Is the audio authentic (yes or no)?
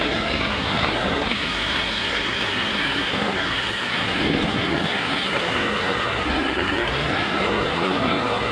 no